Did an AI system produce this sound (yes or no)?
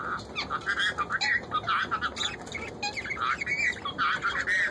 no